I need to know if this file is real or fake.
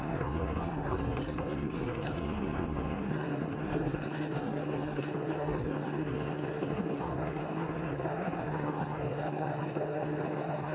fake